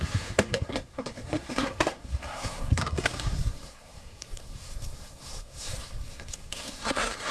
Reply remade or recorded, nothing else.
remade